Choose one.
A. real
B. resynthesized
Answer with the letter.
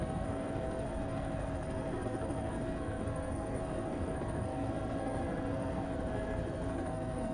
B